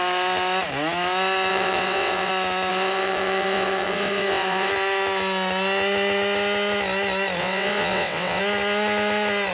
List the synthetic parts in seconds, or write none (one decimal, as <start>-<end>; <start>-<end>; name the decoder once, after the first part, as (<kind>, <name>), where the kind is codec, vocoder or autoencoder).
1.5-2.3 (vocoder, WaveNeXt); 2.7-4.7; 7.4-8.4

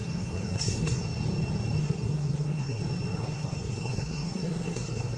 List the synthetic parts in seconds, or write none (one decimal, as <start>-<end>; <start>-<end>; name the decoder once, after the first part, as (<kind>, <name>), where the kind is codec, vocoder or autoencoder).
0.0-1.0 (codec, SNAC); 1.8-2.8; 3.2-5.2

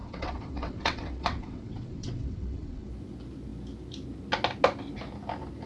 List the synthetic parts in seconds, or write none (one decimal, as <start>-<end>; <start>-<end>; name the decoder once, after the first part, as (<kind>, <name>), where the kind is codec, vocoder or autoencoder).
0.0-2.9 (vocoder, WaveNeXt)